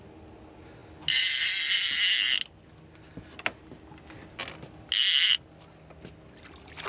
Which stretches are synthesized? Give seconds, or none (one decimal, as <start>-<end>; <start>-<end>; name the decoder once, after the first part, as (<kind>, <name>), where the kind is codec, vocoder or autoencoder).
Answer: none